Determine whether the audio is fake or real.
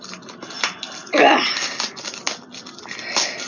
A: real